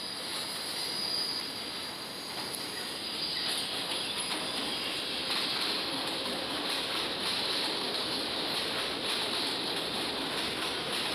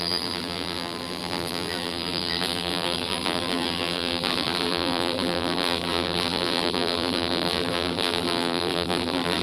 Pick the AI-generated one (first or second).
second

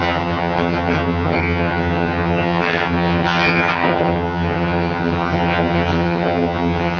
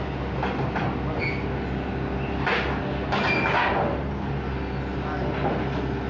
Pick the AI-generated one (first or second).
first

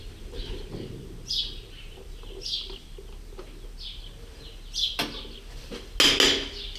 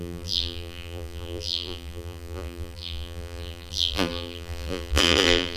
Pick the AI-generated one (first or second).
second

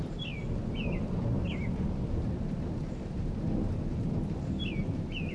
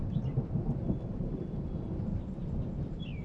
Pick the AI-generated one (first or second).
second